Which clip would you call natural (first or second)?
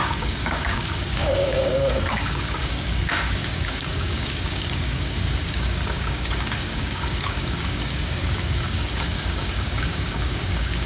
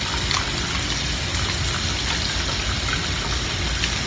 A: second